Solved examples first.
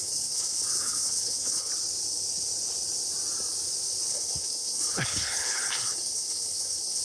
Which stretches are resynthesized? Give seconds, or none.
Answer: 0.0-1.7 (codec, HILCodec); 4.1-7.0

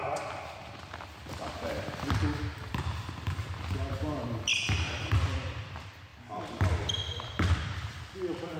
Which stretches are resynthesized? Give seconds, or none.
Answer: 0.0-4.5 (vocoder, BigVGAN v2); 5.0-8.6

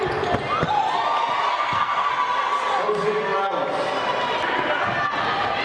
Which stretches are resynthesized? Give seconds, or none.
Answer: 1.5-2.1 (codec, SNAC)